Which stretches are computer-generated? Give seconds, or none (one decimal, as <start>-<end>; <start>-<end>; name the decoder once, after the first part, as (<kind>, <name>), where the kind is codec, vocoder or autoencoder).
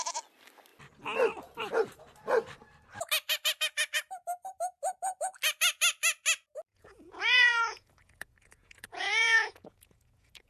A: 6.7-10.5 (vocoder, Vocos)